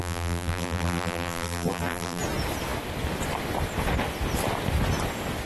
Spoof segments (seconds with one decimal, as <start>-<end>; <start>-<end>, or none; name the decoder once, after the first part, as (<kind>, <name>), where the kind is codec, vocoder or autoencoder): 0.0-2.2 (vocoder, BigVGAN v2)